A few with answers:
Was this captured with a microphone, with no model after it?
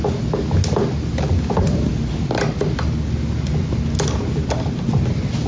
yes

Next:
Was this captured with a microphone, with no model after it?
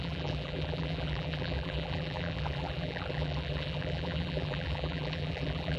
no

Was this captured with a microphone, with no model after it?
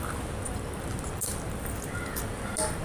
yes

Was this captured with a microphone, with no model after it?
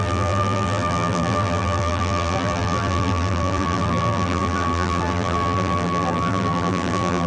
no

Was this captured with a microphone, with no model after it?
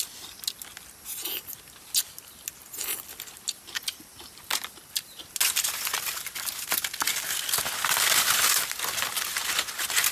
yes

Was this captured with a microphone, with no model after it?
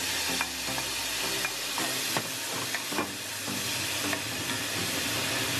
yes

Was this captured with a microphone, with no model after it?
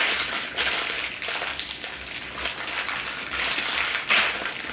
yes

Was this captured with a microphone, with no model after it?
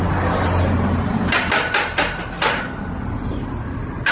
yes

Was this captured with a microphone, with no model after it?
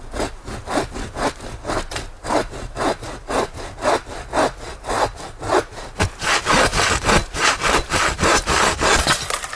yes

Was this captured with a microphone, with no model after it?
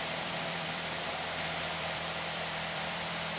no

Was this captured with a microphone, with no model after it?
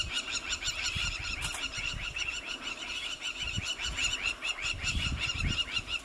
yes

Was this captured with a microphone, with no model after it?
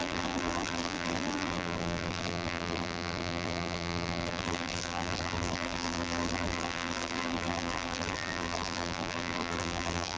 no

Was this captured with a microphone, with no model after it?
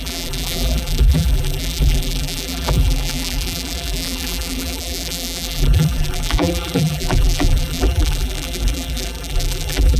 no